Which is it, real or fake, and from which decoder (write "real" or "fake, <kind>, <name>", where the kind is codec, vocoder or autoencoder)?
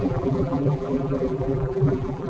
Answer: fake, vocoder, BigVGAN v2